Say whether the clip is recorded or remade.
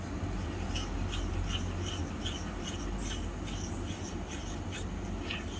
recorded